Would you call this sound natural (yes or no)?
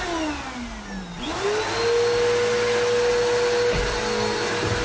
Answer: yes